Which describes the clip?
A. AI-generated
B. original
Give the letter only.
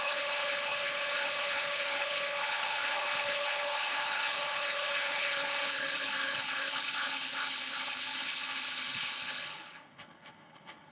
A